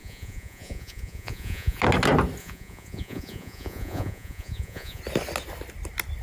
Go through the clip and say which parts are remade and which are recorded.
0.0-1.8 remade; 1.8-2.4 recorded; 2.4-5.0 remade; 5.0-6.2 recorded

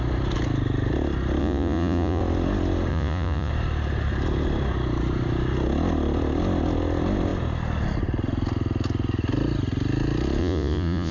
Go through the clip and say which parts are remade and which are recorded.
0.0-1.4 recorded; 1.4-2.2 remade; 2.2-2.9 recorded; 2.9-3.5 remade; 3.5-10.4 recorded; 10.4-11.1 remade

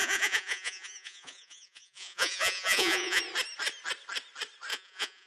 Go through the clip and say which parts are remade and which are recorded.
0.0-3.2 remade; 3.2-4.7 recorded; 4.7-5.3 remade

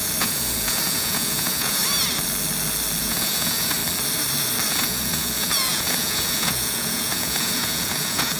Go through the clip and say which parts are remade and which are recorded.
0.0-1.8 remade; 1.8-3.0 recorded; 3.0-3.8 remade; 3.8-4.7 recorded; 4.7-8.4 remade

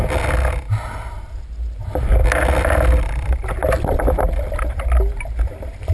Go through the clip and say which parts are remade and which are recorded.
0.0-5.9 recorded

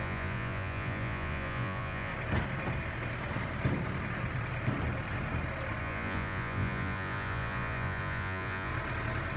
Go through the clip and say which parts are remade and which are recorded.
0.0-2.1 remade; 2.1-5.8 recorded; 5.8-8.7 remade; 8.7-9.4 recorded

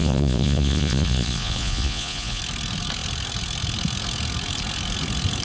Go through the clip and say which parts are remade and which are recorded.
0.0-2.4 remade; 2.4-5.4 recorded